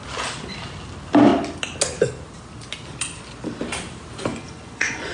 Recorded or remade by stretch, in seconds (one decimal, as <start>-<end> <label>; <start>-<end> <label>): 0.0-4.3 recorded; 4.3-5.1 remade